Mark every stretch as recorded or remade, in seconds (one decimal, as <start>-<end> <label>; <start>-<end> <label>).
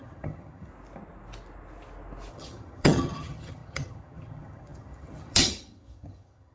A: 0.0-0.7 remade; 0.7-2.3 recorded; 2.3-6.5 remade